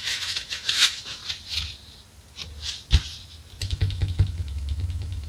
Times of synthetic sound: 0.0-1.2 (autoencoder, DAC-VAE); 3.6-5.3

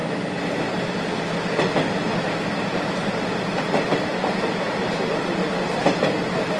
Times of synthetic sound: 0.0-1.2 (vocoder, BigVGAN v2); 2.1-4.9; 5.4-6.6

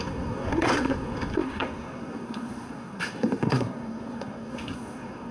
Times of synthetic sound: 0.0-5.3 (codec, SNAC)

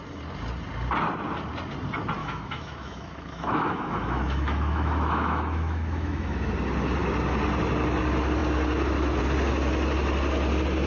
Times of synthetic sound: 2.2-6.5 (autoencoder, DAC-VAE)

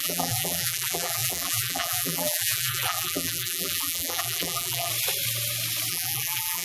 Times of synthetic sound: 0.0-4.9 (vocoder, BigVGAN v2); 5.9-6.6